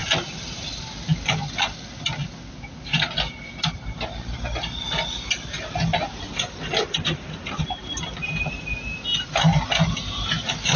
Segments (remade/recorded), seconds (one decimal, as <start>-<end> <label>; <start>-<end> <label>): 0.0-10.8 recorded